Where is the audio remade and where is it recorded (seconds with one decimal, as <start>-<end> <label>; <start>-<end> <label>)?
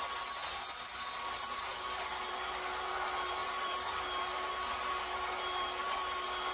0.0-6.5 recorded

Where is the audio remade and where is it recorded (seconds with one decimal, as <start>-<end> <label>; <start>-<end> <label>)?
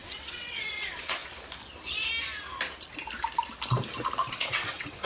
0.0-1.2 remade; 1.2-4.3 recorded; 4.3-5.1 remade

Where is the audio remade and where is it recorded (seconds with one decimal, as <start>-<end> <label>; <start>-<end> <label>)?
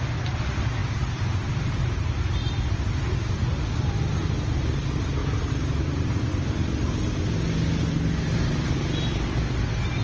0.0-10.0 recorded